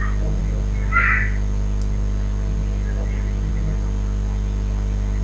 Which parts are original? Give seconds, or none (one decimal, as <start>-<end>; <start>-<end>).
0.0-5.2